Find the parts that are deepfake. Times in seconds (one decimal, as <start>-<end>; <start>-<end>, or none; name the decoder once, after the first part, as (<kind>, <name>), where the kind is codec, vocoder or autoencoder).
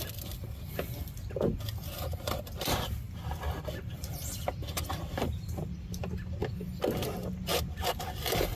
none